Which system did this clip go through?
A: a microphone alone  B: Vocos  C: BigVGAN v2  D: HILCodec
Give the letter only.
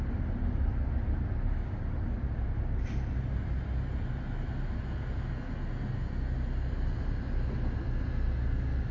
A